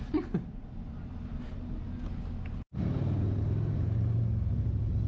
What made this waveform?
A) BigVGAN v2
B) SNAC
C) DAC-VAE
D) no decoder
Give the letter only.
D